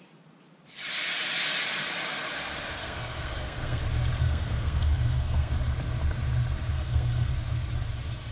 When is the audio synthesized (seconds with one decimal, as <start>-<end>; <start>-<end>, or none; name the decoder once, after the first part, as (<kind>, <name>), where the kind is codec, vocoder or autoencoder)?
2.8-3.8 (codec, SNAC); 4.2-5.5; 6.7-7.3